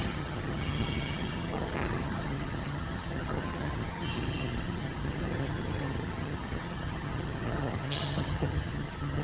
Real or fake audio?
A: fake